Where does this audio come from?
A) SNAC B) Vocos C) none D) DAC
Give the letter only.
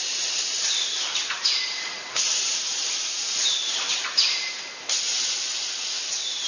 C